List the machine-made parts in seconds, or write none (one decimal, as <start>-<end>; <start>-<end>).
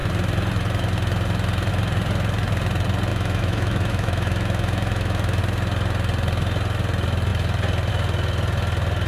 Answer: 3.1-5.4